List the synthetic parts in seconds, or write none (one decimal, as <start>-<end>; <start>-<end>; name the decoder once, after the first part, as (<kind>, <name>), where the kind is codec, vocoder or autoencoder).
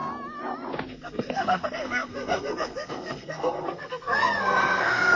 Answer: 0.9-5.2 (codec, SNAC)